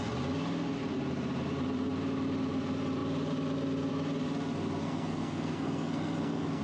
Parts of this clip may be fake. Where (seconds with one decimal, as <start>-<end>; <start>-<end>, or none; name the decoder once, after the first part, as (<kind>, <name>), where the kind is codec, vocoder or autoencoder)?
4.8-6.6 (codec, SNAC)